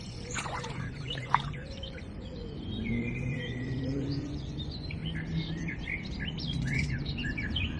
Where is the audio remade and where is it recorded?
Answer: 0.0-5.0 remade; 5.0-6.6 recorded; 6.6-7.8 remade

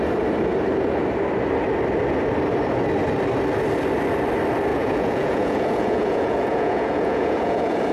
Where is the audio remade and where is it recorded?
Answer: 0.0-4.7 recorded; 4.7-7.9 remade